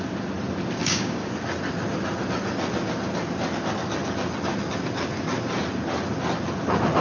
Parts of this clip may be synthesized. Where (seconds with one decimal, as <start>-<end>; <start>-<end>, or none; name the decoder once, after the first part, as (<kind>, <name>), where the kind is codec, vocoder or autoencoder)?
0.8-1.3 (codec, DAC)